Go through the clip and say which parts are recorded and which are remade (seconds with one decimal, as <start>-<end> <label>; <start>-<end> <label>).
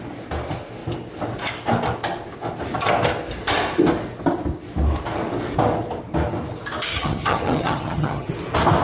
0.0-6.9 recorded; 6.9-8.3 remade; 8.3-8.8 recorded